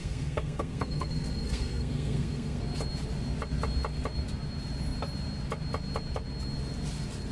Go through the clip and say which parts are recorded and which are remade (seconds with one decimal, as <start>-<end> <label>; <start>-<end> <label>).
0.0-2.6 remade; 2.6-7.3 recorded